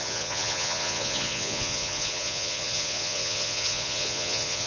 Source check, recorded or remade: remade